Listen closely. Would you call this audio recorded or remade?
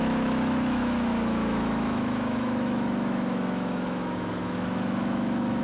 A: remade